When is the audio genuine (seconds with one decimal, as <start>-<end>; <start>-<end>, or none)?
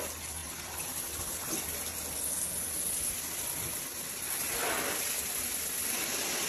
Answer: 0.0-6.5